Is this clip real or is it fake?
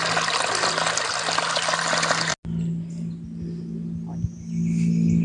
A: real